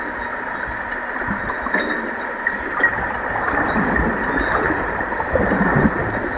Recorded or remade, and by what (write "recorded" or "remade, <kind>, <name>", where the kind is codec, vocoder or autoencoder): recorded